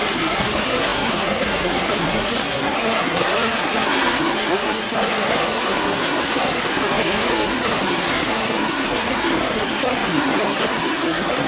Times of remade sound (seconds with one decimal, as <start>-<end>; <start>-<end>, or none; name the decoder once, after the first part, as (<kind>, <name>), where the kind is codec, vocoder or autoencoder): 0.0-11.5 (codec, SNAC)